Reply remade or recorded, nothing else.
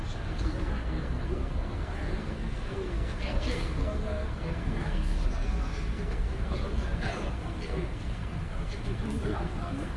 remade